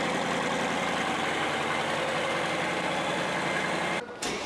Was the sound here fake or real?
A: real